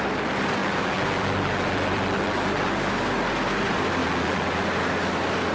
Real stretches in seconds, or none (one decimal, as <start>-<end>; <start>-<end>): 0.0-0.6; 2.7-4.0; 4.6-5.5